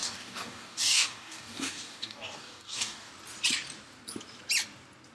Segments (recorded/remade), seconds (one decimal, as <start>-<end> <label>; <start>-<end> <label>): 0.0-3.1 remade; 3.1-5.1 recorded